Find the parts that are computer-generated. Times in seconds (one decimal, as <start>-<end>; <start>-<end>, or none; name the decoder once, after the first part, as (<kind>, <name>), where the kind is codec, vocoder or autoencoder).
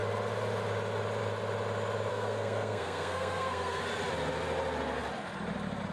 2.1-3.8 (codec, SNAC)